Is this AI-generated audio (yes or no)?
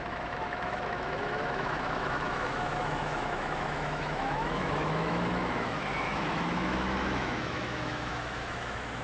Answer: yes